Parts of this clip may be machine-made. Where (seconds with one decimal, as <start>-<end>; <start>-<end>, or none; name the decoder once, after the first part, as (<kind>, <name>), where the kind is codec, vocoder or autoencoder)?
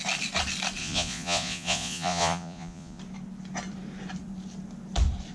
0.8-3.0 (vocoder, Vocos)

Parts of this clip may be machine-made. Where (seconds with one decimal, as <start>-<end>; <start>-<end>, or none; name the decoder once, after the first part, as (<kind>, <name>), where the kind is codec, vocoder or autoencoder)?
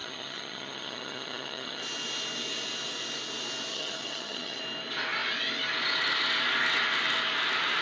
0.0-1.8 (vocoder, HiFi-GAN); 3.7-4.6